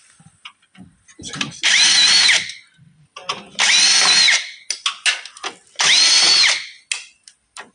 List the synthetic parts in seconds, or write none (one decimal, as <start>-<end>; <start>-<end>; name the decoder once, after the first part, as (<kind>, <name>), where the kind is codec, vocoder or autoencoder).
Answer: none